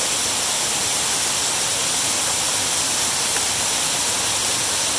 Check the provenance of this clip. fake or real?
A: real